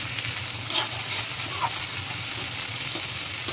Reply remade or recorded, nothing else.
recorded